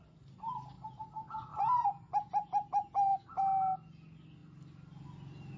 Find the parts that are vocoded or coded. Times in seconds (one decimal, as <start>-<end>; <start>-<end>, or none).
none

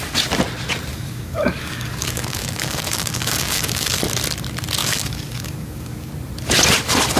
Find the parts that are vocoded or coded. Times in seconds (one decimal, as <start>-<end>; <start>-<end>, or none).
0.9-4.0; 4.8-6.1

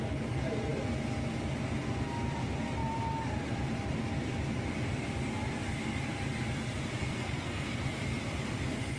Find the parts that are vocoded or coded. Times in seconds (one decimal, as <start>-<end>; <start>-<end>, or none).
7.0-7.7

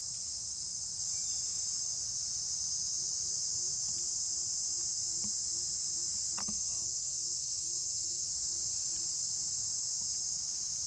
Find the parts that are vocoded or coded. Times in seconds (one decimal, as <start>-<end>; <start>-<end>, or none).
6.4-8.3

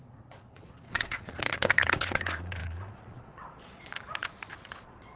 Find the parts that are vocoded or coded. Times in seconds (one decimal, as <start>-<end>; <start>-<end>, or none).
0.0-5.2